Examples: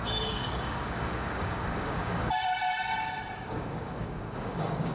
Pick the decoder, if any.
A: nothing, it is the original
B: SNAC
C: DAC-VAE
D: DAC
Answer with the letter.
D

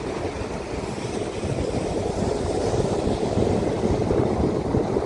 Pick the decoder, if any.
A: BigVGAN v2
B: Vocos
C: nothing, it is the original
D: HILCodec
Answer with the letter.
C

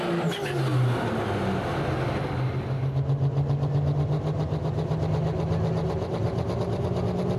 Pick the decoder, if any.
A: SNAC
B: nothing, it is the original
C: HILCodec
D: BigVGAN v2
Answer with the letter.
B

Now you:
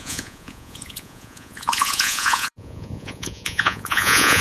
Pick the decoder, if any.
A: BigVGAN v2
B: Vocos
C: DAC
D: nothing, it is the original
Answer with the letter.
B